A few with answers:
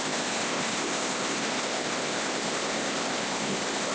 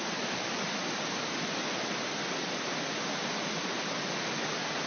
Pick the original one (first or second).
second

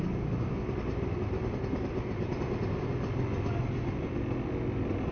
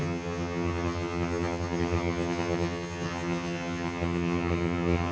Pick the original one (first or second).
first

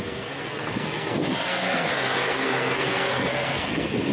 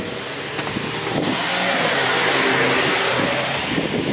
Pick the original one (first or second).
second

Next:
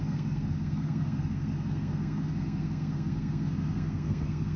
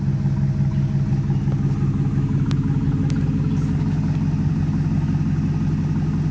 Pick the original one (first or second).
second